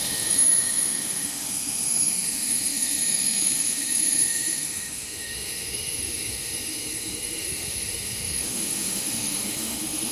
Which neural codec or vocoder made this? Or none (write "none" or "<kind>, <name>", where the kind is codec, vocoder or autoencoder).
autoencoder, DAC-VAE